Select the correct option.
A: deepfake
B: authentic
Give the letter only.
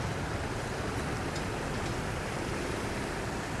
B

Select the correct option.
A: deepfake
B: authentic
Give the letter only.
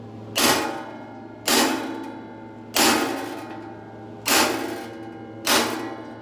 B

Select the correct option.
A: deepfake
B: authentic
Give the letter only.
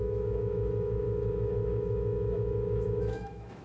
A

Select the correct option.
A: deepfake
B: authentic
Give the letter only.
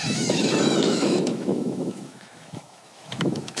A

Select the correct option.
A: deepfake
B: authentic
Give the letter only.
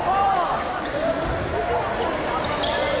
A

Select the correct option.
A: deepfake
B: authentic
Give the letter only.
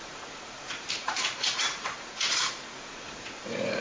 A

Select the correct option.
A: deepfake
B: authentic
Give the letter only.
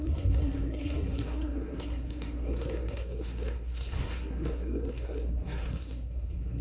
A